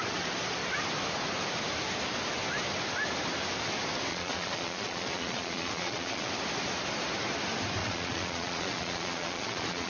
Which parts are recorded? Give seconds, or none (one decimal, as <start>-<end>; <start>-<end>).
0.0-4.1; 6.3-7.8